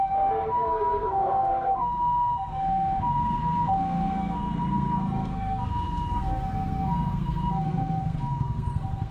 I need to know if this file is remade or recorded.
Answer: remade